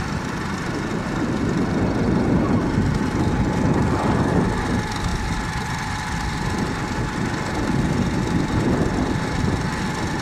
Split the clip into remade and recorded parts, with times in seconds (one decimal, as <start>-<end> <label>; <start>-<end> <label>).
0.0-10.2 recorded